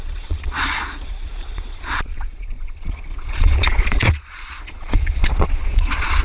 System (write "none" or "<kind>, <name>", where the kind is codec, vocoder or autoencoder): vocoder, Vocos